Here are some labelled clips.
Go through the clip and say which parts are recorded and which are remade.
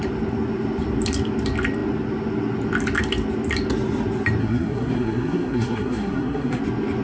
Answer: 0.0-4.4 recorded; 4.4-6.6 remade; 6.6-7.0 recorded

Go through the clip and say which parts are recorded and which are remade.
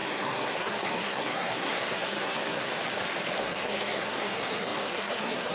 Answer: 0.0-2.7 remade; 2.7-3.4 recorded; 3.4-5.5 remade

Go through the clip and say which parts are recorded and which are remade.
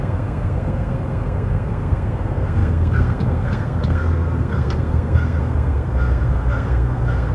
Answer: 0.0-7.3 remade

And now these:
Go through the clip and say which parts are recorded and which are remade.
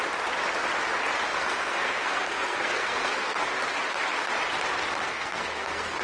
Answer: 0.0-1.3 recorded; 1.3-3.6 remade; 3.6-5.0 recorded; 5.0-6.0 remade